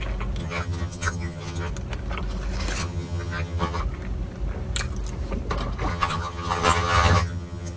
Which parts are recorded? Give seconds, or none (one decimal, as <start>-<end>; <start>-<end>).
0.0-0.4; 1.7-2.8; 3.8-5.9